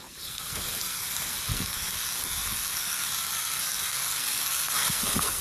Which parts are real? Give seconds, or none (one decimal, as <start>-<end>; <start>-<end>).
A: none